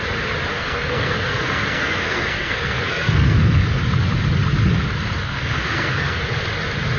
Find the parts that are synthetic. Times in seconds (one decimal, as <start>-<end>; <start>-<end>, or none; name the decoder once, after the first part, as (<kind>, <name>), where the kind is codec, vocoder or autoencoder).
0.5-3.8 (codec, SNAC); 5.2-6.2